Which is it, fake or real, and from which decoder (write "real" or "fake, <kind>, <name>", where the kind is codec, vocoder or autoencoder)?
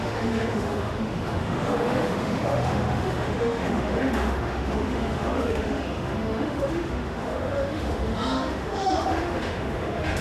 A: fake, autoencoder, DAC-VAE